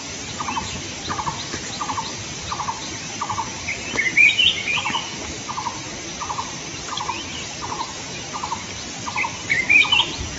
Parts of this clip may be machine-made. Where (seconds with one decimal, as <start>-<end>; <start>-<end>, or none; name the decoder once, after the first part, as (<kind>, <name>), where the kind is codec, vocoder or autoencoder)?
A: 5.9-6.5 (vocoder, BigVGAN v2); 9.3-10.0